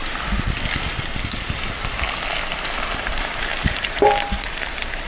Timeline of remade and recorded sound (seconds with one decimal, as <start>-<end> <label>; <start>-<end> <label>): 0.0-3.1 recorded; 3.1-5.1 remade